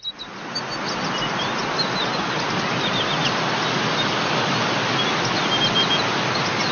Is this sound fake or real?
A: real